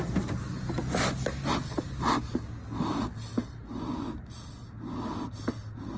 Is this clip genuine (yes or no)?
yes